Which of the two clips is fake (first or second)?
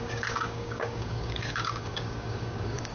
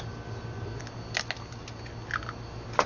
first